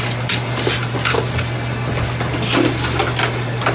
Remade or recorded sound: recorded